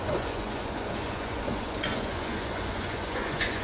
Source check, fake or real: fake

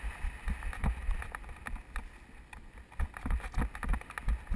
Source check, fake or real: real